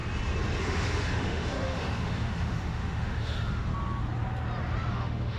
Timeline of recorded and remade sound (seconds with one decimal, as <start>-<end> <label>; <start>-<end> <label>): 0.0-0.6 recorded; 0.6-3.7 remade; 3.7-4.9 recorded; 4.9-5.4 remade